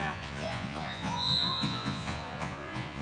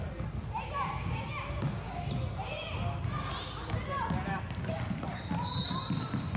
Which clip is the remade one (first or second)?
first